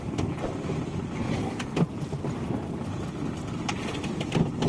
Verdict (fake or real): real